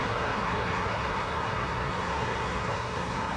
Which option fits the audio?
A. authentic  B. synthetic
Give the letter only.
B